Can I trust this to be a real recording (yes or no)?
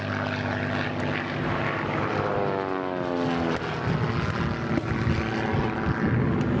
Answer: yes